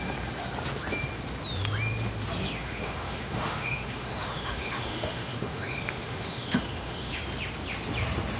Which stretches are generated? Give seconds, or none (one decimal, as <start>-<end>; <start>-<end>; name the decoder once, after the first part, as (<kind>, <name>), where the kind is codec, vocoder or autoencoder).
2.6-7.2 (autoencoder, DAC-VAE)